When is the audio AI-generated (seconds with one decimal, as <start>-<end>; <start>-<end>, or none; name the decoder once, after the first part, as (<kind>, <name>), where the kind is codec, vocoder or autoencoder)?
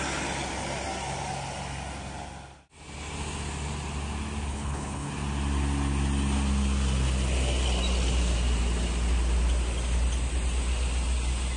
4.5-5.1 (codec, HILCodec)